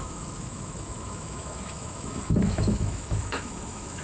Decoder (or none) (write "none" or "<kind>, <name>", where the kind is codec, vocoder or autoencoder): autoencoder, DAC-VAE